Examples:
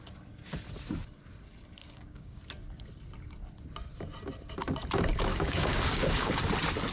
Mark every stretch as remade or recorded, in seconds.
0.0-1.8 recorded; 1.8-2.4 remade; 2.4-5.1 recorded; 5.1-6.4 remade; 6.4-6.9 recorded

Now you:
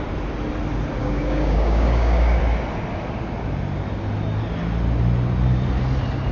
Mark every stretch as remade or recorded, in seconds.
0.0-1.0 recorded; 1.0-2.4 remade; 2.4-6.3 recorded

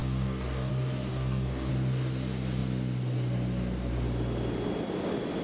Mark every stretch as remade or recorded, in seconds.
0.0-0.7 remade; 0.7-1.1 recorded; 1.1-1.7 remade; 1.7-5.4 recorded

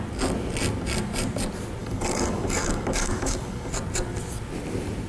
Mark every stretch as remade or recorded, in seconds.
0.0-1.8 recorded; 1.8-3.7 remade; 3.7-5.1 recorded

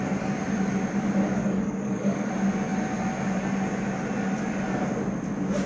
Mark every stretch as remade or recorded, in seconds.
0.0-1.4 recorded; 1.4-2.3 remade; 2.3-5.7 recorded

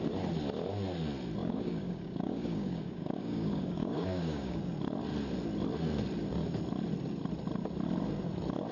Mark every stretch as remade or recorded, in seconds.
0.0-1.4 recorded; 1.4-4.6 remade; 4.6-8.7 recorded

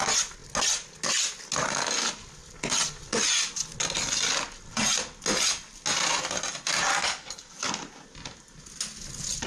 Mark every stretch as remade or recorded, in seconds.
0.0-6.9 recorded; 6.9-7.7 remade; 7.7-9.5 recorded